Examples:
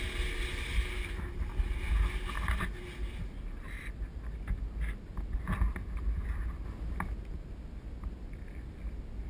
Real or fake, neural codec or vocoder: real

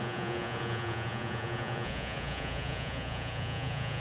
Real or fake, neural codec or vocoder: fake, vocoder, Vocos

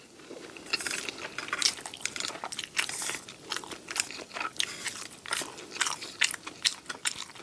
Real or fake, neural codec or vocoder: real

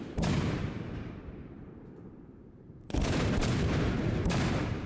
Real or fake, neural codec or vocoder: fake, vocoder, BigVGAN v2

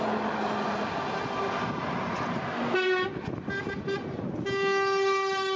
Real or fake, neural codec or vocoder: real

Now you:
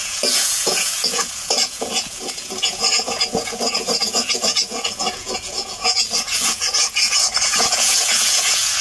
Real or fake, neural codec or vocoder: fake, vocoder, Vocos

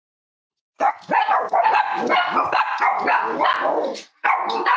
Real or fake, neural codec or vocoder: real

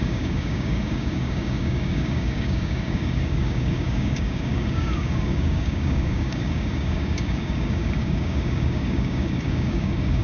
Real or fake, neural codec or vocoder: fake, codec, DAC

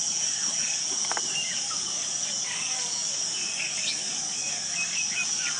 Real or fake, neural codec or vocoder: fake, codec, DAC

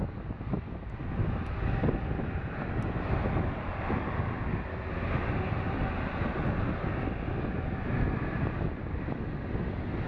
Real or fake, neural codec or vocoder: real